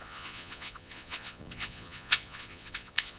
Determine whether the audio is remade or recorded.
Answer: remade